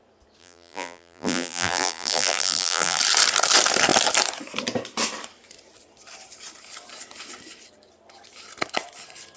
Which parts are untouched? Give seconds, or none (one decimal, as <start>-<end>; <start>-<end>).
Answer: 0.0-0.4; 3.0-9.4